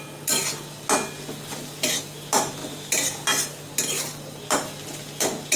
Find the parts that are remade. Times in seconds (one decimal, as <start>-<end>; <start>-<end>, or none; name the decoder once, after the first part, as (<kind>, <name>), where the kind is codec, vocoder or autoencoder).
none

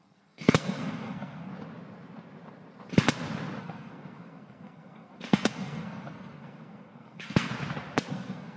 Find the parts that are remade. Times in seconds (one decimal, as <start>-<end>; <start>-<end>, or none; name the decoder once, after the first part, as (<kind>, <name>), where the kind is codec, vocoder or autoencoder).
0.0-1.5 (codec, SNAC); 3.6-7.5; 8.1-8.6

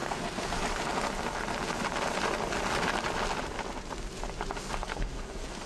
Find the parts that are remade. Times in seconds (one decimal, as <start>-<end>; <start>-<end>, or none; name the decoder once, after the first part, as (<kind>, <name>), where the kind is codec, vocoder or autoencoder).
0.0-0.6 (codec, SNAC); 4.6-5.7

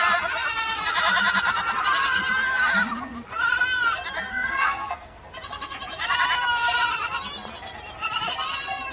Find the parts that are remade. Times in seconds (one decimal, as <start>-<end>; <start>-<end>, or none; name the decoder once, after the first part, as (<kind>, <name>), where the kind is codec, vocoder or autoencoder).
4.3-5.2 (codec, SNAC)

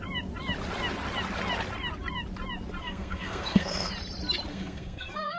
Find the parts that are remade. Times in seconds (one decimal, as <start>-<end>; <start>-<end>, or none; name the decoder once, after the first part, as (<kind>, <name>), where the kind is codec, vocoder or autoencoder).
2.8-3.9 (codec, SNAC); 4.5-5.4

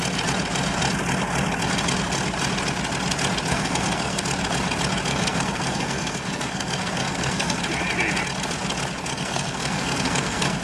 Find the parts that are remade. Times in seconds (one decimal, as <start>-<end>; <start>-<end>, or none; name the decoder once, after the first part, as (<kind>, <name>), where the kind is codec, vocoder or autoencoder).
3.5-4.2 (codec, SNAC); 5.1-7.6; 9.1-10.6

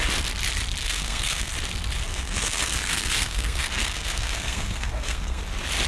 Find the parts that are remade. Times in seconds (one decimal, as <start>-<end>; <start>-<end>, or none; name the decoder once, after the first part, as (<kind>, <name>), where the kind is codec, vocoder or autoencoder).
0.8-1.5 (codec, SNAC); 2.1-5.4